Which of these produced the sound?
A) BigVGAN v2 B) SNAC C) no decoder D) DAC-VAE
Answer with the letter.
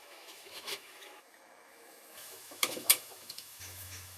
D